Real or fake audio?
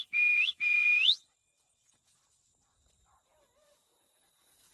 fake